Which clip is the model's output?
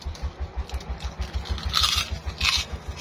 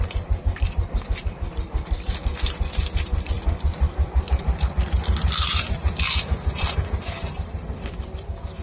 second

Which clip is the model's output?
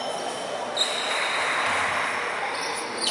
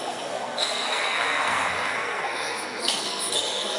second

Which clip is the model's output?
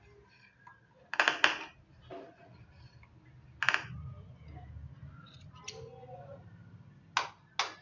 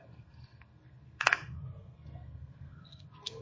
second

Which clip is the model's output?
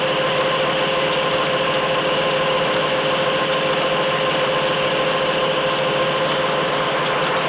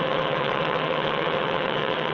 second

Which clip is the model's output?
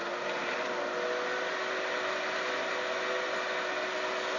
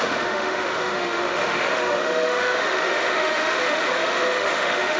second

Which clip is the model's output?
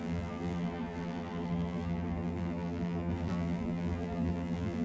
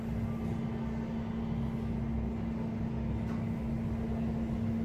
first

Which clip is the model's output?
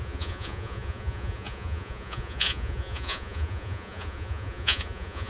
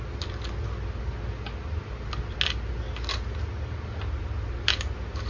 first